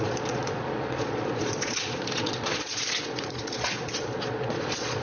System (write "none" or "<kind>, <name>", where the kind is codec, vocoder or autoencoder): vocoder, Vocos